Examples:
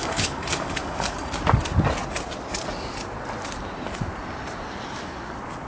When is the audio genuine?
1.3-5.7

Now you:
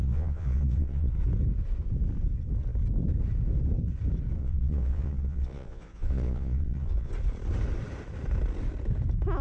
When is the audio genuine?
1.1-4.4; 7.1-9.4

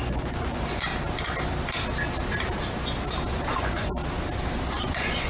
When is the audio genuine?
0.9-3.3; 4.0-4.7